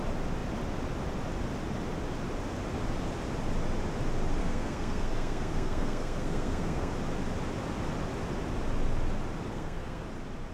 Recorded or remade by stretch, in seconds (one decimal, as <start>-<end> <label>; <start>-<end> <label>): 0.0-4.4 recorded; 4.4-6.9 remade; 6.9-9.5 recorded; 9.5-10.0 remade; 10.0-10.5 recorded